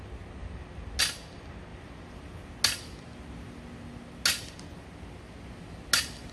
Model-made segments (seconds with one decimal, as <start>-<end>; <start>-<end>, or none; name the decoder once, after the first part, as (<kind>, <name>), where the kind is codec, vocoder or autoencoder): 1.7-2.4 (vocoder, BigVGAN v2)